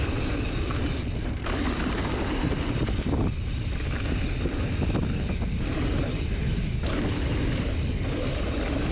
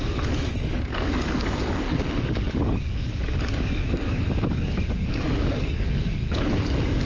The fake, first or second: second